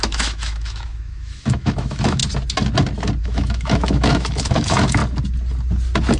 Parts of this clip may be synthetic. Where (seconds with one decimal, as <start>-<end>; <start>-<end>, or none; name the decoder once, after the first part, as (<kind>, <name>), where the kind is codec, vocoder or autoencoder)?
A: 0.0-2.2 (autoencoder, DAC-VAE); 3.2-5.0